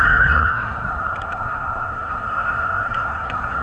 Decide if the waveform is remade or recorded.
remade